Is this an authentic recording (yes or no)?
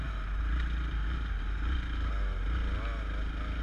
yes